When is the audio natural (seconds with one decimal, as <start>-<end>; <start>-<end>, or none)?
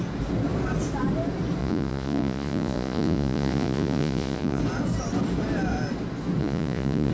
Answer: 0.0-1.6; 4.6-6.4